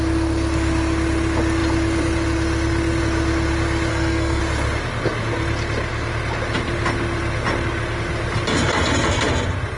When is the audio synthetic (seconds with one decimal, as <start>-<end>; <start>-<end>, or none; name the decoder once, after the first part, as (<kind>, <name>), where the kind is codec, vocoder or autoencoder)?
3.9-4.4 (codec, SNAC)